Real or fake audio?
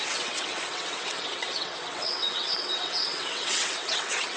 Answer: fake